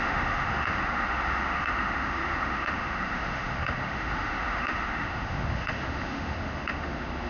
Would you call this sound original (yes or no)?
no